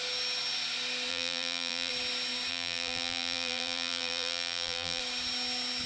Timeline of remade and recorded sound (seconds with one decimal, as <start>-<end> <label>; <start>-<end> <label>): 0.0-1.1 recorded; 1.1-1.9 remade; 1.9-2.5 recorded; 2.5-5.0 remade; 5.0-5.9 recorded